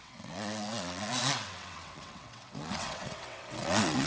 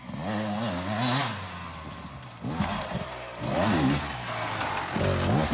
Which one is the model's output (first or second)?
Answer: first